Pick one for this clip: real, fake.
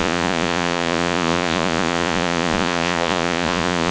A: fake